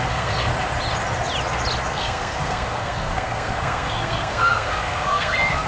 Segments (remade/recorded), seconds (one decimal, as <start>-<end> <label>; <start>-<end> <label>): 0.0-0.5 remade; 0.5-1.9 recorded; 1.9-5.7 remade